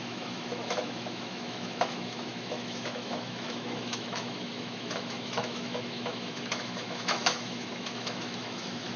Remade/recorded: remade